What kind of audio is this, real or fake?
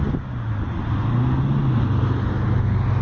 real